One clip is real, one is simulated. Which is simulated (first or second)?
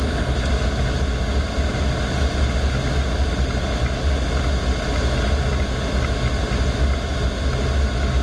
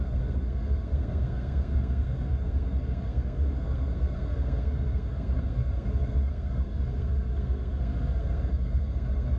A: second